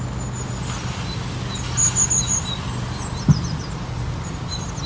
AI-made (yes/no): no